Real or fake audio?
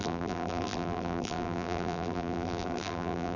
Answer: fake